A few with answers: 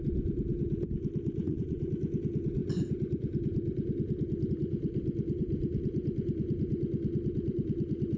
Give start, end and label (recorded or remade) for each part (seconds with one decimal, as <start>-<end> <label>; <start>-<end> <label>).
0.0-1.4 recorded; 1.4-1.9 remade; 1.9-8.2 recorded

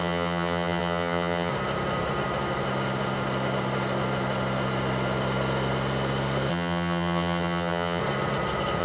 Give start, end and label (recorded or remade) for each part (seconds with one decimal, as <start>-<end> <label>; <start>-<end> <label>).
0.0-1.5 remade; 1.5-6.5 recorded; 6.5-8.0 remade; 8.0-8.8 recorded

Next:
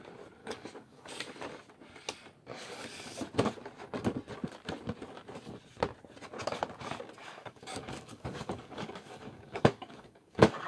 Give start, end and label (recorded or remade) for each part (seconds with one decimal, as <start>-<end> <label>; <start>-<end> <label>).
0.0-0.4 recorded; 0.4-1.1 remade; 1.1-2.5 recorded; 2.5-3.2 remade; 3.2-7.2 recorded; 7.2-10.7 remade

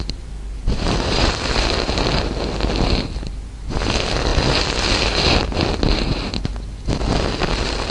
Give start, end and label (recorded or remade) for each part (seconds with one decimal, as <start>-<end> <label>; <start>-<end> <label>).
0.0-0.6 recorded; 0.6-1.3 remade; 1.3-7.9 recorded

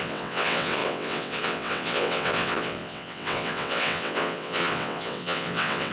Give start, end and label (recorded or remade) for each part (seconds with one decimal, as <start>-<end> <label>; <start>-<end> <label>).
0.0-5.9 remade

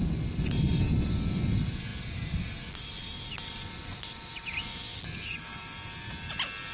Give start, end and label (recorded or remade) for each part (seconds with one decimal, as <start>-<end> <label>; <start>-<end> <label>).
0.0-6.7 recorded

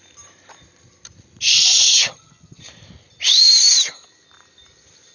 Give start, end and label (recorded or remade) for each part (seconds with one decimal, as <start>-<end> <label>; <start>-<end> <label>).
0.0-1.9 recorded; 1.9-2.6 remade; 2.6-5.1 recorded